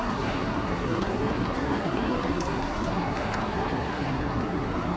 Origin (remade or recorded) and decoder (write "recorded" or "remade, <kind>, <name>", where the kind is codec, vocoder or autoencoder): remade, codec, SNAC